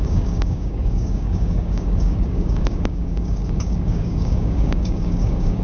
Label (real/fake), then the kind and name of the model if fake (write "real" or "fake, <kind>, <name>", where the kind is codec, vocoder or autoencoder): fake, codec, DAC